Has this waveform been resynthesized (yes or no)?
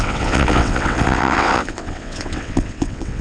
yes